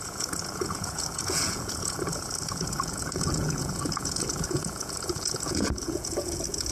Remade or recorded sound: remade